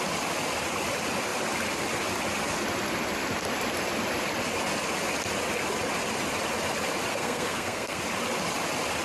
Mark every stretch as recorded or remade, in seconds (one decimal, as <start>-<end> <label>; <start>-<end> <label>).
0.0-7.1 recorded; 7.1-8.0 remade; 8.0-9.0 recorded